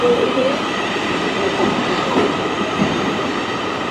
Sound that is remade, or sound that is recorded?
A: remade